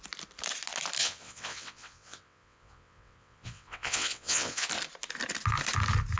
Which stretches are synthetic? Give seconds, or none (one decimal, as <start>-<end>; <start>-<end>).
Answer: 1.0-4.7